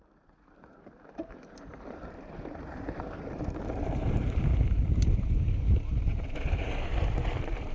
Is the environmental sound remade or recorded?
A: remade